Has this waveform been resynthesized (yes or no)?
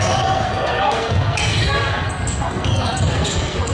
yes